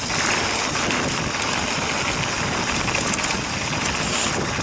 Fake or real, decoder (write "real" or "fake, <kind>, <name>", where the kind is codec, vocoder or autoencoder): real